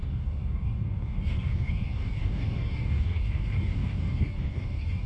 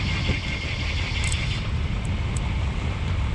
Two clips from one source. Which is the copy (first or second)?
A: first